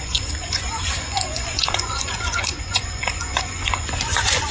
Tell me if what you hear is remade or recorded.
remade